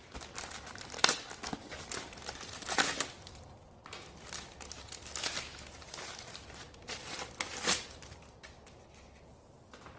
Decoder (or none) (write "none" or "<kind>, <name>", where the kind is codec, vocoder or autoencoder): none